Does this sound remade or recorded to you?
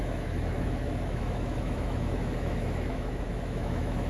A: remade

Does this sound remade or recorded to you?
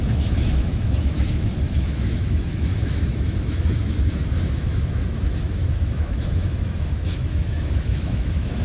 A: remade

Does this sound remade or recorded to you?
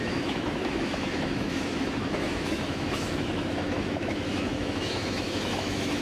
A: remade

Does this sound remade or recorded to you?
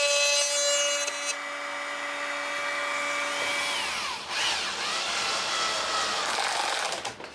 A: recorded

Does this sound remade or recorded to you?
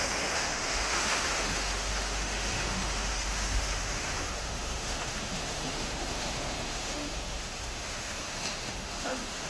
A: remade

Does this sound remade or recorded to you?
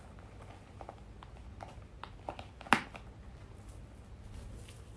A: recorded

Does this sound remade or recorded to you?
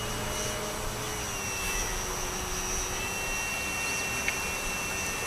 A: recorded